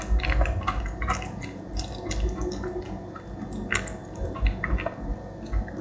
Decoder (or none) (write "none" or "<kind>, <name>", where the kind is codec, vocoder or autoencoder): none